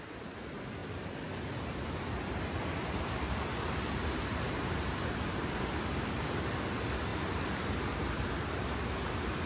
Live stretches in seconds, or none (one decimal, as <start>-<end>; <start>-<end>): 0.0-0.8; 5.8-7.1; 8.3-9.5